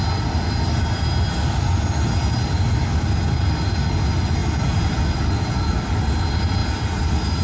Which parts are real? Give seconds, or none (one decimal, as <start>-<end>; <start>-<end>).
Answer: 0.0-7.4